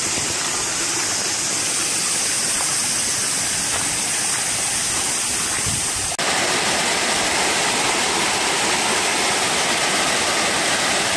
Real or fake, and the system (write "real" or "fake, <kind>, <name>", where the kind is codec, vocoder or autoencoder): real